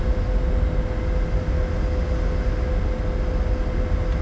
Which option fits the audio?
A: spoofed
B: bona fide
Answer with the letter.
B